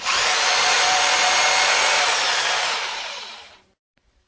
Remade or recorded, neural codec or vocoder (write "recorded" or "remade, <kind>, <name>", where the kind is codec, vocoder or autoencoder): remade, vocoder, BigVGAN v2